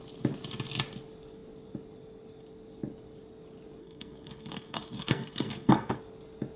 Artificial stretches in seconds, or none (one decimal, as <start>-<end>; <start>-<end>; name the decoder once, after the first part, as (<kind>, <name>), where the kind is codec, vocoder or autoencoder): 3.8-6.0 (codec, SNAC)

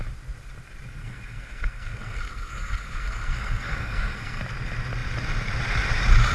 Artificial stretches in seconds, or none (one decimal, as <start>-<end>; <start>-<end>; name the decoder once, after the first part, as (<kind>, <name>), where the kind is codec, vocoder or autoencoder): 1.0-4.4 (codec, SNAC)

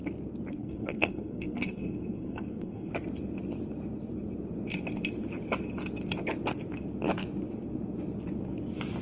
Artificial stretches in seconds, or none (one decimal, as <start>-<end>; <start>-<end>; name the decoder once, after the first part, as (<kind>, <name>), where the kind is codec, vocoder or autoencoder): 0.5-2.9 (codec, SNAC)

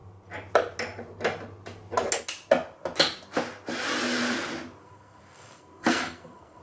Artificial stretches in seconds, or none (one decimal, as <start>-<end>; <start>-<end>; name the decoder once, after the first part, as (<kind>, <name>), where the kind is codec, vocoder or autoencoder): 4.8-6.6 (codec, SNAC)

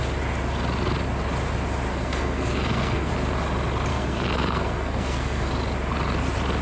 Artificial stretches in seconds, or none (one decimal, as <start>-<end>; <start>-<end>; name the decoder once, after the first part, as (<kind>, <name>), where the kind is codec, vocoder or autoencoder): 1.9-3.1 (codec, SNAC); 3.9-5.5

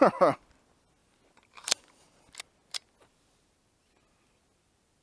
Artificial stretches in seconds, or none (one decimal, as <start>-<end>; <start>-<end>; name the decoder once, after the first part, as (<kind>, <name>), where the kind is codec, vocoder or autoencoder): none

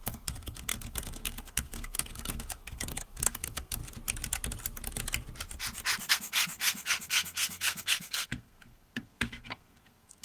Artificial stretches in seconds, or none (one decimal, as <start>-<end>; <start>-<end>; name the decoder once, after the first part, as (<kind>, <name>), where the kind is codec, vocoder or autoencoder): 0.0-3.8 (codec, SNAC); 6.1-10.2